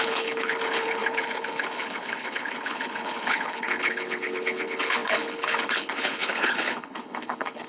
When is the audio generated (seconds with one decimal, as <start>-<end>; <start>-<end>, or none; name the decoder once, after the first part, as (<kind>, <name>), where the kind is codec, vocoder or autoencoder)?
0.0-7.7 (codec, HILCodec)